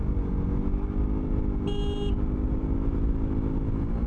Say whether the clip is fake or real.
real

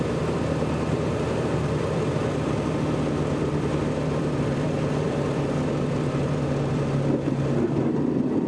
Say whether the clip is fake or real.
fake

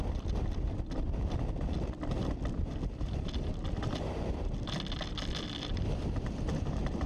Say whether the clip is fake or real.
real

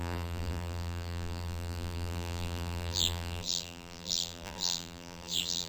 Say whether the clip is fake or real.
fake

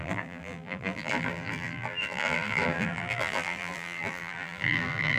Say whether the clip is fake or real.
fake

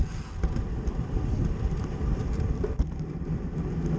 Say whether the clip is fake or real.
real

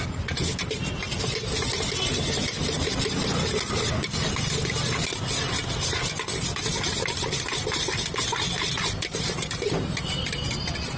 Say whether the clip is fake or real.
real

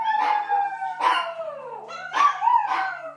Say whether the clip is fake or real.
fake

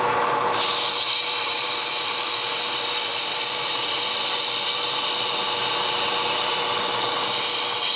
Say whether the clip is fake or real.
fake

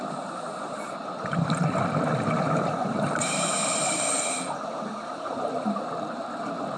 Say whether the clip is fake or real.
real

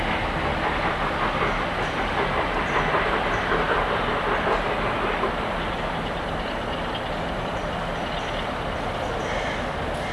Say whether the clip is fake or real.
real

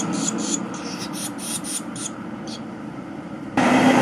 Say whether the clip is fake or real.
fake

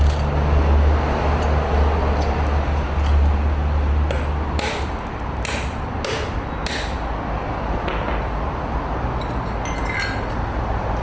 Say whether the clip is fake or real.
real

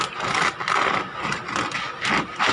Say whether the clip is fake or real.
real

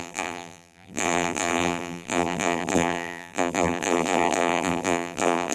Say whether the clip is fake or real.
fake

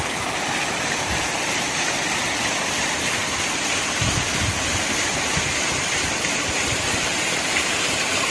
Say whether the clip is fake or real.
fake